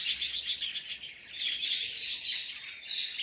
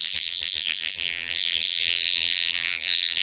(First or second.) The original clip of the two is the first